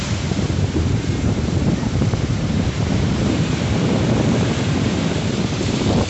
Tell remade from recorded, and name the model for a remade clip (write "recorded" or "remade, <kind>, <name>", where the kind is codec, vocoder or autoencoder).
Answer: remade, vocoder, BigVGAN v2